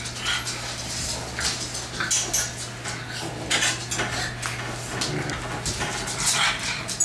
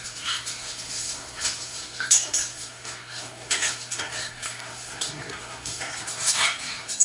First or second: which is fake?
second